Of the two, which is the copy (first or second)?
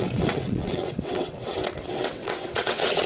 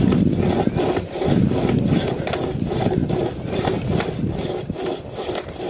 first